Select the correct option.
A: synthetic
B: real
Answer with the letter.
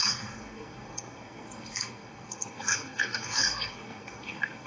A